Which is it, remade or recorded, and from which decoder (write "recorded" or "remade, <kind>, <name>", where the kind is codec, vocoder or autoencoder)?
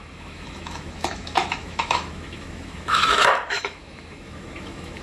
remade, autoencoder, DAC-VAE